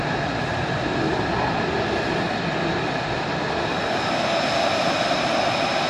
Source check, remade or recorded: recorded